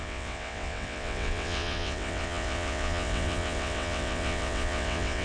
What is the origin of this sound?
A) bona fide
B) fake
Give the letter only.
B